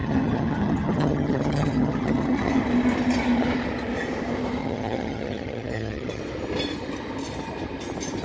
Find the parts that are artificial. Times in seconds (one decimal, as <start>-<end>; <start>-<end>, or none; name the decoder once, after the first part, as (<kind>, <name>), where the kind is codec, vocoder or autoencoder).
0.0-2.6 (vocoder, HiFi-GAN); 4.6-6.2